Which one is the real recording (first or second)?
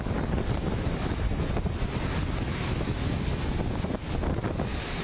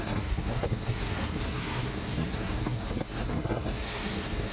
first